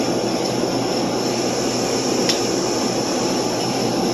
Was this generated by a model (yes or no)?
no